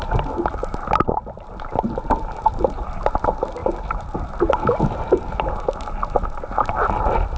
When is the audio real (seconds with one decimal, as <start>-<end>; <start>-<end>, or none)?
0.0-0.6; 1.2-7.4

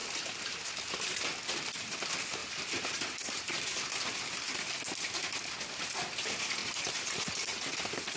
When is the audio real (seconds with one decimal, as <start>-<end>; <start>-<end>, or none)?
0.7-2.4; 4.6-6.6

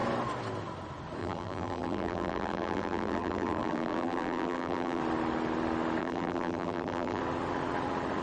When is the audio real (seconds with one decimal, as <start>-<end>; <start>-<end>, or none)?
0.0-1.2; 5.0-6.0; 7.2-8.2

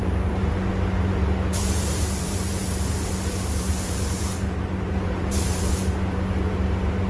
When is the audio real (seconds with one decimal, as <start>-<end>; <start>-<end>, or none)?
0.7-1.5; 5.7-7.1

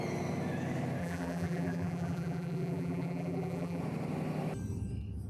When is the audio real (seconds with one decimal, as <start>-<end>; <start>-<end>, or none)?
0.0-1.0; 3.8-5.3

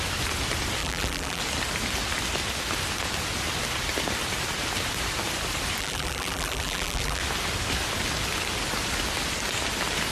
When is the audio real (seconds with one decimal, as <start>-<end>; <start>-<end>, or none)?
0.0-0.8; 1.4-5.8; 7.2-10.1

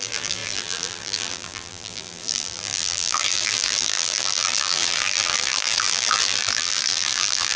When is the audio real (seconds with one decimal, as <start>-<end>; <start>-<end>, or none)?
none